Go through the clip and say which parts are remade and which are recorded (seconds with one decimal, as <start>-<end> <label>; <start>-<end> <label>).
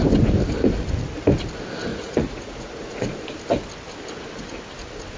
0.0-1.9 recorded; 1.9-3.2 remade; 3.2-5.2 recorded